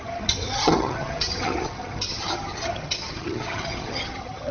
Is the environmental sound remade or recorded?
remade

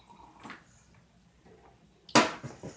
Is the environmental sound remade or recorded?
recorded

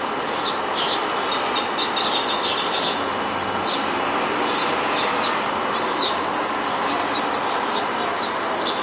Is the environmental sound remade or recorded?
recorded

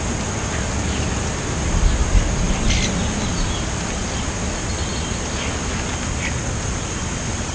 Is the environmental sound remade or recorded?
recorded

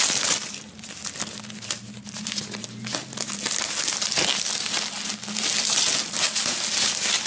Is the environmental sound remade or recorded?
recorded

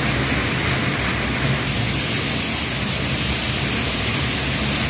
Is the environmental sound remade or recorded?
recorded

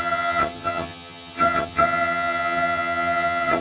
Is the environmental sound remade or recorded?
remade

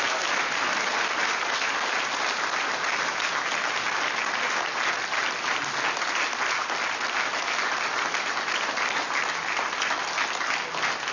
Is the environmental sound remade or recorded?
recorded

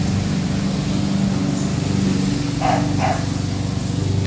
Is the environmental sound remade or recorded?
recorded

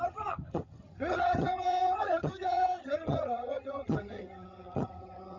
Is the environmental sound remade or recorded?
remade